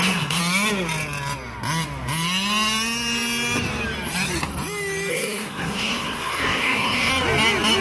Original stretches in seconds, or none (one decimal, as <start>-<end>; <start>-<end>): 0.4-5.1; 7.1-7.8